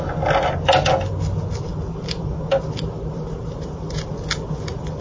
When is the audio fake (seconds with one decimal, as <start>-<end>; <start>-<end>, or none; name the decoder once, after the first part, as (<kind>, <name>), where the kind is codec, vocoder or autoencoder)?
1.7-4.1 (vocoder, BigVGAN v2)